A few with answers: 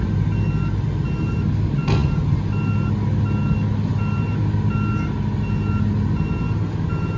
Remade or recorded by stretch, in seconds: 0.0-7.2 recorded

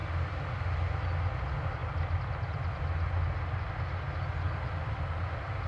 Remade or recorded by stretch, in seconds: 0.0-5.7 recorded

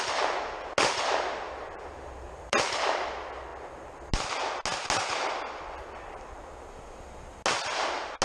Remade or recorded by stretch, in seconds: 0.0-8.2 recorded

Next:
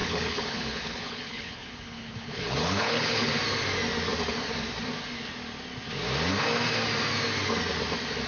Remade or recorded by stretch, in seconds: 0.0-3.3 remade; 3.3-8.3 recorded

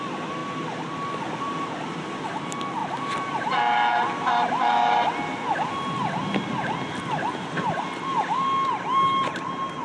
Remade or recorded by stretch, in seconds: 0.0-9.8 recorded

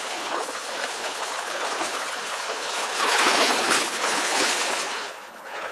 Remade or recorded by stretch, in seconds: 0.0-5.7 remade

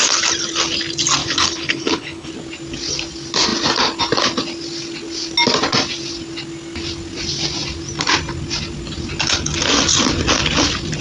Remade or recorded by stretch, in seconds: 0.0-1.2 recorded; 1.2-2.3 remade; 2.3-11.0 recorded

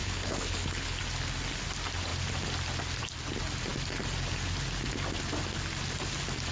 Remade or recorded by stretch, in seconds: 0.0-1.0 remade; 1.0-6.5 recorded